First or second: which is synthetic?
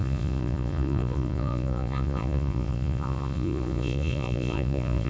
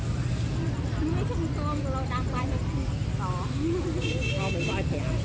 first